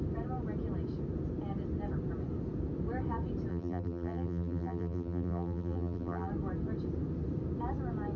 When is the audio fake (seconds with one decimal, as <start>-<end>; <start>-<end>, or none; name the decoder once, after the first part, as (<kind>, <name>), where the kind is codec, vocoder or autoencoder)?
3.5-6.3 (vocoder, BigVGAN v2)

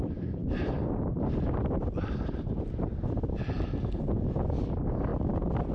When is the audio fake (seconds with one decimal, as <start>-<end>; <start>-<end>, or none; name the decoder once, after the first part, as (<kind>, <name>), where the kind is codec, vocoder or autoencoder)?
none

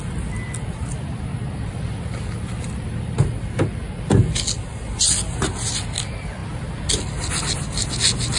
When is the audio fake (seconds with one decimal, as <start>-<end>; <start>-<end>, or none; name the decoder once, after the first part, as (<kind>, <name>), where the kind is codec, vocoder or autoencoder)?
1.3-3.5 (vocoder, BigVGAN v2)